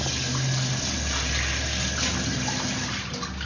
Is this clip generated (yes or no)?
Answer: no